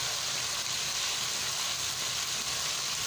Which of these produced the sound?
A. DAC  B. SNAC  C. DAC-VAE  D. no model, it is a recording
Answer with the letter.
D